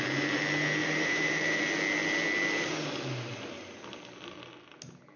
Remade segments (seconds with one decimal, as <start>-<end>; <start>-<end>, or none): 0.8-1.6